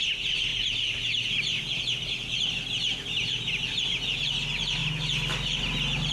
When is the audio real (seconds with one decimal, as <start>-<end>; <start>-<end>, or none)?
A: 0.0-6.1